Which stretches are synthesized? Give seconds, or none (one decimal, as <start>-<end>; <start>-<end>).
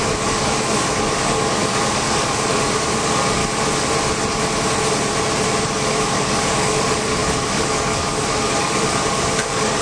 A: 0.0-3.4; 6.0-9.8